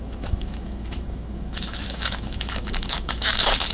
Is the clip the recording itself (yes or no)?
no